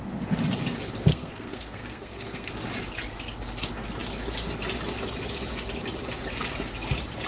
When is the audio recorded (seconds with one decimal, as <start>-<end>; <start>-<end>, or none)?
0.0-1.1; 2.5-7.3